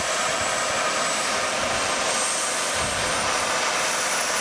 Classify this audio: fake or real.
fake